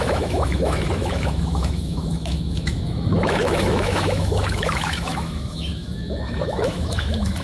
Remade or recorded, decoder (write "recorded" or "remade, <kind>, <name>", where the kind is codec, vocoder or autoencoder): remade, autoencoder, DAC-VAE